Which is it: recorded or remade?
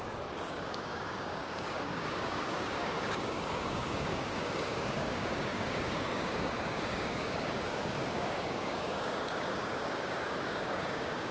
remade